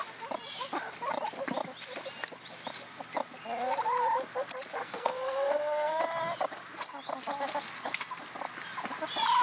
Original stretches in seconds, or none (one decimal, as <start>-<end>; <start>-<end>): 0.0-4.8; 6.0-9.4